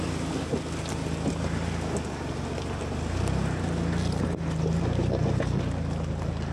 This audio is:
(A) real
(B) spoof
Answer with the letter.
A